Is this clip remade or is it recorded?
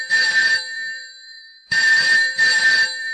remade